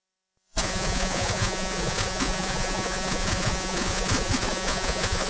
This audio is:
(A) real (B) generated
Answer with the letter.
B